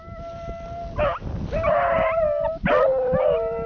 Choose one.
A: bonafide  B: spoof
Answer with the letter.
A